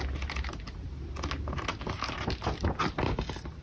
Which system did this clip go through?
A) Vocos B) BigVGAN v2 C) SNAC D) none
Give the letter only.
D